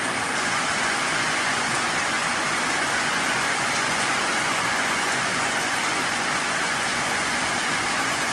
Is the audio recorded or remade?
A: remade